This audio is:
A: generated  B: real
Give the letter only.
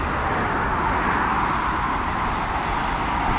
B